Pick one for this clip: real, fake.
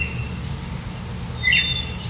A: real